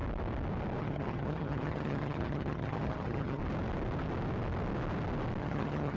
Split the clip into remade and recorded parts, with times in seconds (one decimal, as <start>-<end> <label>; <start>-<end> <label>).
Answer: 0.0-0.8 recorded; 0.8-3.4 remade; 3.4-5.4 recorded; 5.4-6.0 remade